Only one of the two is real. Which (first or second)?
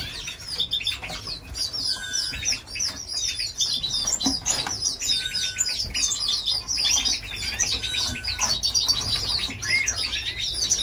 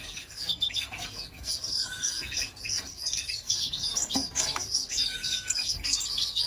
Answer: first